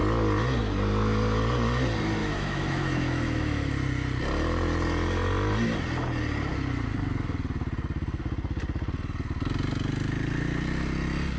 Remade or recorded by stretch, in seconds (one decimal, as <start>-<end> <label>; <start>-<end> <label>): 0.0-2.2 recorded; 2.2-3.7 remade; 3.7-11.4 recorded